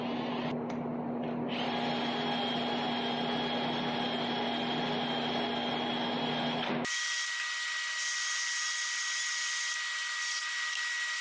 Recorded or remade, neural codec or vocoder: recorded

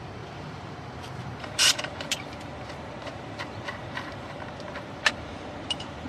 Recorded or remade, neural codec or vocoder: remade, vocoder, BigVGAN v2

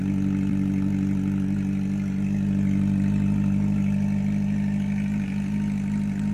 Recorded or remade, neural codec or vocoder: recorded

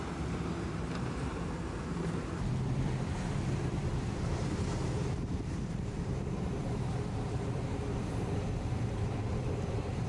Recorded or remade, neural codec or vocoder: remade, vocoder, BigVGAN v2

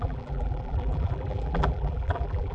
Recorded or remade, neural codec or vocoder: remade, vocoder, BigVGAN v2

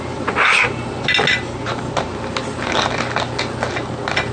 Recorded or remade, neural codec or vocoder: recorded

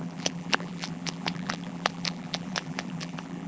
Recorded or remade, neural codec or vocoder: remade, vocoder, BigVGAN v2